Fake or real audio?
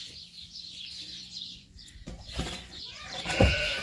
fake